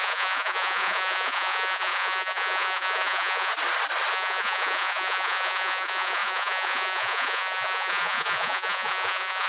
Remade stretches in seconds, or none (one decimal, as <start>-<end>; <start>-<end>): 0.0-3.5; 4.1-9.5